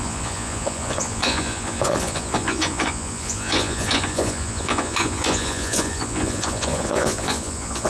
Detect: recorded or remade remade